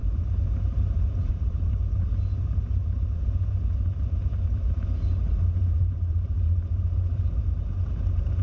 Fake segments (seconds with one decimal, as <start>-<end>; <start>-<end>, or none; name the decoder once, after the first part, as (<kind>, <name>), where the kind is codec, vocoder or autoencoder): 0.0-8.4 (vocoder, BigVGAN v2)